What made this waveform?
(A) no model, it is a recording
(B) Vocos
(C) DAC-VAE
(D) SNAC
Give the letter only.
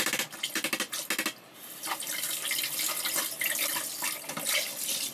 A